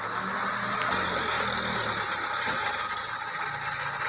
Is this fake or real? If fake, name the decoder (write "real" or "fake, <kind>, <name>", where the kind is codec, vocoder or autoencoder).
real